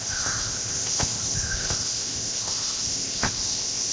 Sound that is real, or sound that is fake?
fake